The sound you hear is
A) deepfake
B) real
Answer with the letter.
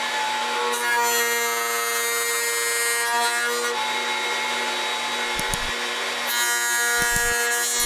B